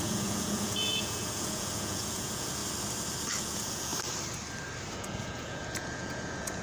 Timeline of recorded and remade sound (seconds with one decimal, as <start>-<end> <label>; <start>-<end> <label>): 0.0-2.6 remade; 2.6-3.4 recorded; 3.4-3.9 remade; 3.9-5.0 recorded; 5.0-6.6 remade